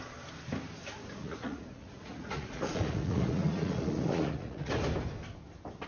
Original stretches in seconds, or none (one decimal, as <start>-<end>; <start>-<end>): 0.0-1.2; 4.7-5.9